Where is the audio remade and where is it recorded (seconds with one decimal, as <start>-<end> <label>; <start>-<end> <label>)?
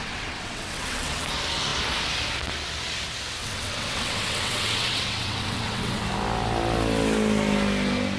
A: 0.0-1.2 remade; 1.2-3.4 recorded; 3.4-6.0 remade; 6.0-8.2 recorded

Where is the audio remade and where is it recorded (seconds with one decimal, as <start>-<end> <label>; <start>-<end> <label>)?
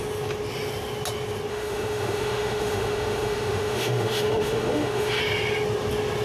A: 0.0-1.5 recorded; 1.5-5.2 remade; 5.2-6.2 recorded